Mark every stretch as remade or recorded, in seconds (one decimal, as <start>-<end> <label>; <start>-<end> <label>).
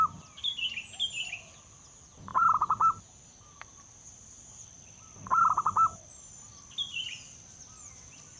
0.0-2.3 recorded; 2.3-6.4 remade; 6.4-8.4 recorded